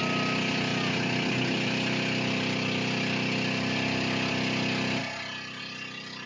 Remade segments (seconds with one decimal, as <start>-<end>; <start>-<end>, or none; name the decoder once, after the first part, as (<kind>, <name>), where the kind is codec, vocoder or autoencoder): none